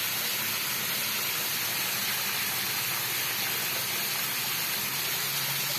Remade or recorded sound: recorded